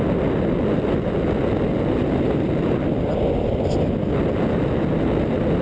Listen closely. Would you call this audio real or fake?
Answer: real